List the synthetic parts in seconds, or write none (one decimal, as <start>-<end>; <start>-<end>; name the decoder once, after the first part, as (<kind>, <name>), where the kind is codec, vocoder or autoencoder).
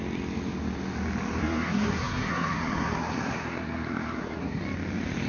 1.4-4.6 (codec, SNAC)